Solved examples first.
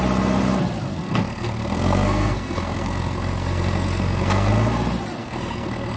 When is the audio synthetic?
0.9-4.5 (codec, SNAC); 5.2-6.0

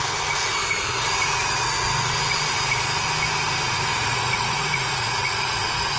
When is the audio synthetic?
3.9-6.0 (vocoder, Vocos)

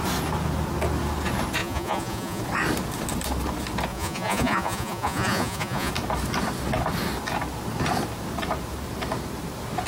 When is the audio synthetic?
1.6-2.4 (vocoder, Vocos); 3.9-5.9

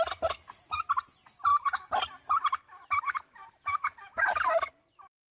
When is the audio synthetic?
none

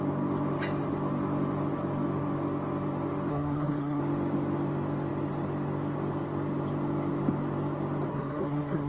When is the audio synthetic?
3.3-4.0 (codec, SNAC); 8.1-8.9

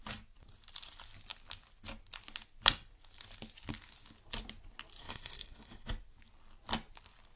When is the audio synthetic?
5.0-5.9 (codec, SNAC)

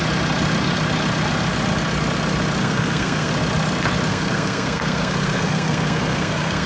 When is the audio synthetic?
2.6-3.3 (codec, SNAC); 4.1-6.7

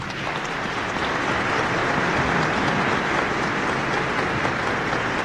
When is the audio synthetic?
none